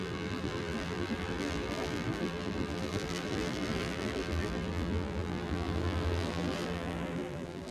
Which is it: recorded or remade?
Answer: remade